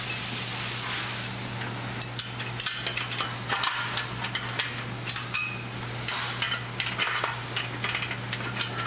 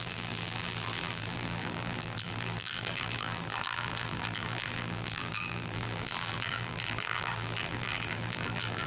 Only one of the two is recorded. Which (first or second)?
first